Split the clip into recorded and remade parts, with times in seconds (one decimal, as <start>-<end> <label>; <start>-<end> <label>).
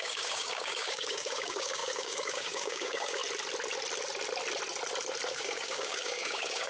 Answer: 0.0-3.2 remade; 3.2-5.3 recorded; 5.3-6.7 remade